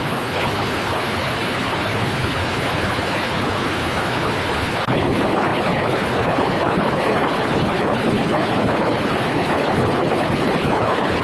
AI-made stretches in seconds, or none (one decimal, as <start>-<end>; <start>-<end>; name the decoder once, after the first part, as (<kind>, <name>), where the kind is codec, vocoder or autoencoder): 0.0-11.2 (codec, HILCodec)